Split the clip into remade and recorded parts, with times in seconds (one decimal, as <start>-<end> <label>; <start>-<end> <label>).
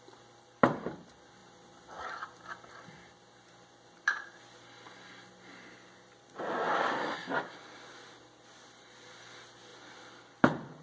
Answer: 0.0-10.8 remade